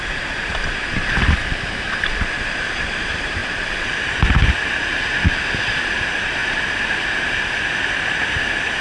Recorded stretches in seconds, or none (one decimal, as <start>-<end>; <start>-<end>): 3.4-5.4